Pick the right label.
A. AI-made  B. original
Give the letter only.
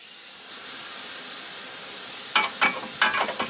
B